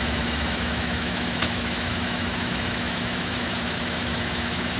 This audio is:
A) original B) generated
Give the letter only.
B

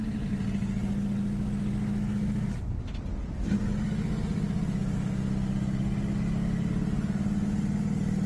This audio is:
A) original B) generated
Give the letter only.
A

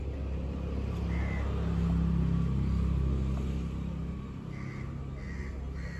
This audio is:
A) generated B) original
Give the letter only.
B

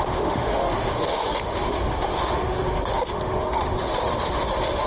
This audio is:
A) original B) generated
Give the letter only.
B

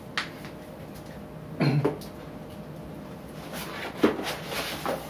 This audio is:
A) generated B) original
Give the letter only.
B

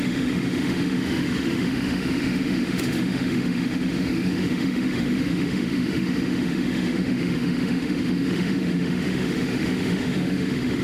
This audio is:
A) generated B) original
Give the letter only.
A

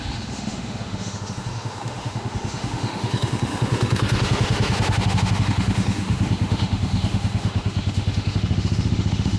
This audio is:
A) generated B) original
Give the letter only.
A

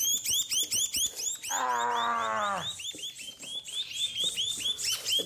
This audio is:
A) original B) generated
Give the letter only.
A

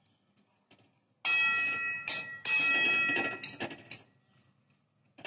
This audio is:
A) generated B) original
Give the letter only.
B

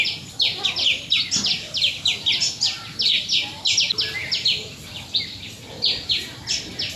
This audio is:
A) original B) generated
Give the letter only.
A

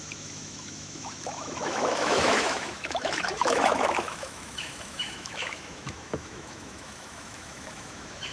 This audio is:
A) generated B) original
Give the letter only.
A